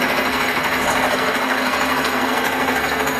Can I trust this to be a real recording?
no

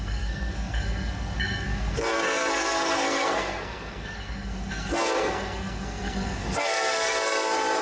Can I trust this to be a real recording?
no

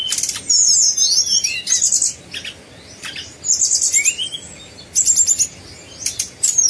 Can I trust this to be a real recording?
yes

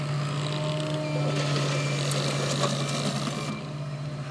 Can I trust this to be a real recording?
yes